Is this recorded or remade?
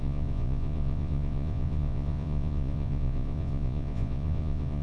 remade